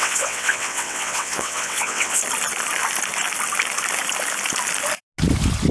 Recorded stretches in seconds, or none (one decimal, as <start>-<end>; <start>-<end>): 2.2-5.7